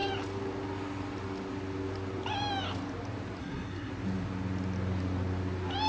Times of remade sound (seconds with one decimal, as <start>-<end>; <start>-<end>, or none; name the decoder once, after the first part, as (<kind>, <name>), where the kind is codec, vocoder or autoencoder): 3.4-3.9 (codec, SNAC)